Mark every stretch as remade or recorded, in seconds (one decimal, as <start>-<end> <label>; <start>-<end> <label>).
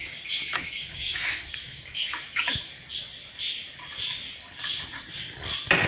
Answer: 0.0-0.5 recorded; 0.5-2.7 remade; 2.7-5.9 recorded